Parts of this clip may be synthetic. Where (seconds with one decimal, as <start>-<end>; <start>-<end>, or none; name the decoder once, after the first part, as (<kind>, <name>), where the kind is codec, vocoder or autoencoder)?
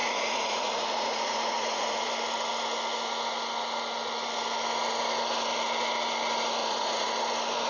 0.0-2.1 (vocoder, Vocos); 6.6-7.1